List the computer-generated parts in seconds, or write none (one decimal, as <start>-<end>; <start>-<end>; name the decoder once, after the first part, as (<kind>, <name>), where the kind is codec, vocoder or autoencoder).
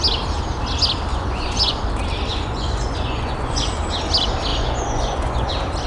1.1-1.8 (vocoder, Vocos); 2.3-3.6; 4.5-5.5